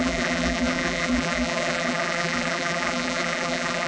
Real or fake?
fake